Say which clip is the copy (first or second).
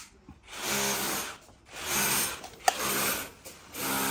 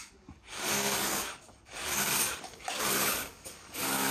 second